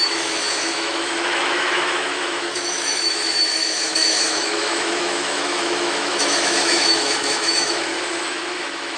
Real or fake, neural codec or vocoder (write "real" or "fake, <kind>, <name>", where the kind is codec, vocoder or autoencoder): fake, autoencoder, DAC-VAE